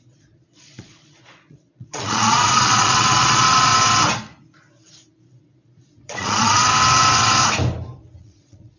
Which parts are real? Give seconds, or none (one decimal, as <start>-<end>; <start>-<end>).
3.7-5.3; 6.6-8.2